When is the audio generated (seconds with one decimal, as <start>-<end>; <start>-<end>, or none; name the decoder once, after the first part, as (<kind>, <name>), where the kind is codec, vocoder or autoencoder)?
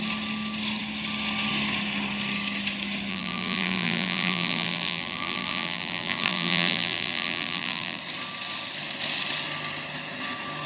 3.1-8.0 (vocoder, BigVGAN v2)